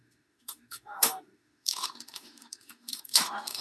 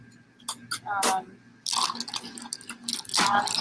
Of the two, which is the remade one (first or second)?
first